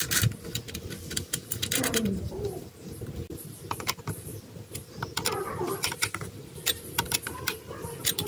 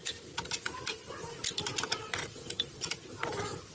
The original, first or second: second